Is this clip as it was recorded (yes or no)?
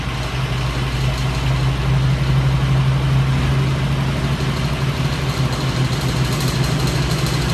yes